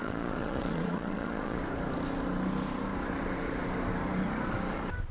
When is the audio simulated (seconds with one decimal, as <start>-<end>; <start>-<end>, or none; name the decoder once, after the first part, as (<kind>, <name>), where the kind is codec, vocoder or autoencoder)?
0.0-1.6 (vocoder, Vocos)